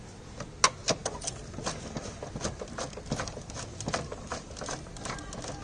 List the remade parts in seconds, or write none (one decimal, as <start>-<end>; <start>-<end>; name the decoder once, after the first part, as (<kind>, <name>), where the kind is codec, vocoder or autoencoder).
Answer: none